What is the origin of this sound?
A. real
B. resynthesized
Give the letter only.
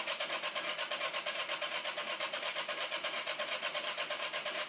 A